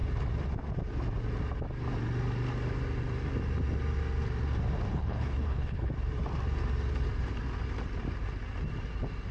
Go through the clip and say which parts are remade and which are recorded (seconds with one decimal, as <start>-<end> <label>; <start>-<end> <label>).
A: 0.0-4.9 recorded; 4.9-5.9 remade; 5.9-9.3 recorded